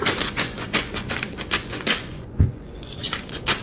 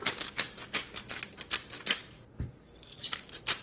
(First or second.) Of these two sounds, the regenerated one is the first